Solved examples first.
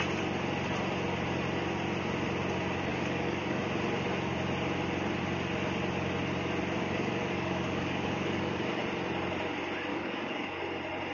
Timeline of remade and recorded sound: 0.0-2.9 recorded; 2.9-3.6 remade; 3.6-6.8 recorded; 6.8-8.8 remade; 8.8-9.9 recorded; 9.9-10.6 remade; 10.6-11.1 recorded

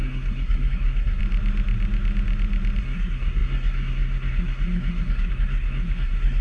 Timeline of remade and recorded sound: 0.0-1.2 remade; 1.2-2.8 recorded; 2.8-6.4 remade

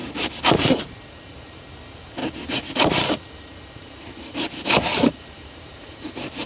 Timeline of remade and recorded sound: 0.0-1.6 remade; 1.6-2.2 recorded; 2.2-6.0 remade; 6.0-6.5 recorded

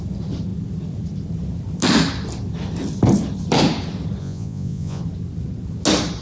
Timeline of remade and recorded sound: 0.0-4.2 recorded; 4.2-5.0 remade; 5.0-6.2 recorded

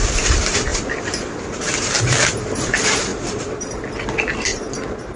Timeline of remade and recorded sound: 0.0-0.7 recorded; 0.7-2.7 remade; 2.7-3.1 recorded; 3.1-3.8 remade; 3.8-4.5 recorded; 4.5-5.2 remade

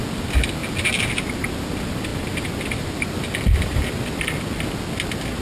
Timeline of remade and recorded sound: 0.0-5.4 recorded

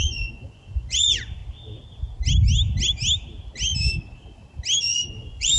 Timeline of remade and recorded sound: 0.0-1.4 remade; 1.4-4.8 recorded; 4.8-5.6 remade